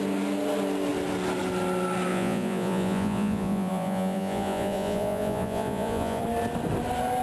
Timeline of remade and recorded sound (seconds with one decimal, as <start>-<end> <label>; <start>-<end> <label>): 0.0-2.1 recorded; 2.1-6.2 remade; 6.2-7.2 recorded